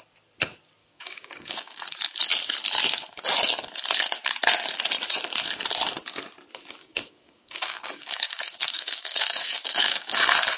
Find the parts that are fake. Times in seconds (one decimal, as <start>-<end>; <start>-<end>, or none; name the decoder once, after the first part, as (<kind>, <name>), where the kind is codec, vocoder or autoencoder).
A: 0.8-1.8 (codec, DAC); 6.8-10.2

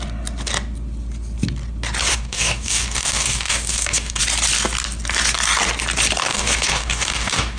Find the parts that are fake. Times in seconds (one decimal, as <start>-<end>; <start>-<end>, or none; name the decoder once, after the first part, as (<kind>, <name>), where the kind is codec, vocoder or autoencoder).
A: 2.1-4.2 (codec, DAC); 6.2-7.6

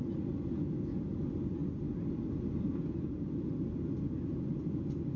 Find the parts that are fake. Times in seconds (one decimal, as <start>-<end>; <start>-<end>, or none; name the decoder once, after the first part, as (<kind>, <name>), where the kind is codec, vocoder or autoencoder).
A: none

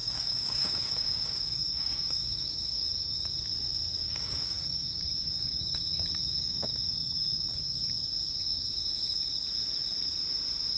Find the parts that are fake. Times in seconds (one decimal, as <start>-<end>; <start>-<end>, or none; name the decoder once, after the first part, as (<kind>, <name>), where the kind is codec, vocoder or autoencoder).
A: 0.0-3.3 (codec, DAC); 4.0-7.8; 8.3-9.3

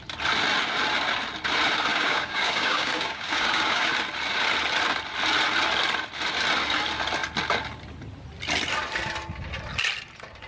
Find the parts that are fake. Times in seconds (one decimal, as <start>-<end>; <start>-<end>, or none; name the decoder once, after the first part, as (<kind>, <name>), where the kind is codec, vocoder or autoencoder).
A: 1.9-3.9 (codec, DAC)

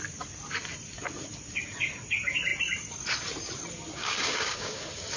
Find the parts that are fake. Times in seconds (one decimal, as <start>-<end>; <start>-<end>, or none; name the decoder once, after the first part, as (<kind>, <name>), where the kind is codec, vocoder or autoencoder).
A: 4.0-5.2 (codec, DAC)

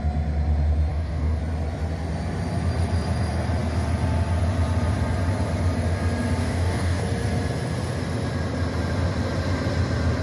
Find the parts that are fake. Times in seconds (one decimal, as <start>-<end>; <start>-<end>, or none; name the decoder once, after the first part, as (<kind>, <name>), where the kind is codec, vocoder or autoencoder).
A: 0.9-1.4 (codec, DAC); 6.4-7.0